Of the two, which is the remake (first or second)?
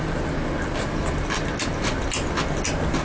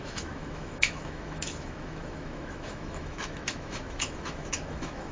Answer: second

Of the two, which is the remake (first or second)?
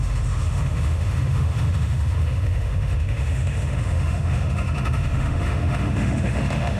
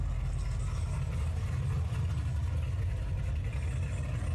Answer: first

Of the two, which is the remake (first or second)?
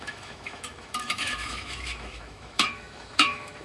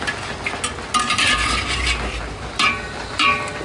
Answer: first